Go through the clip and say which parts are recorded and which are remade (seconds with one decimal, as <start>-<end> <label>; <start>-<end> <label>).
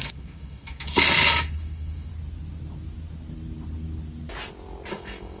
0.0-2.1 remade; 2.1-4.9 recorded; 4.9-5.4 remade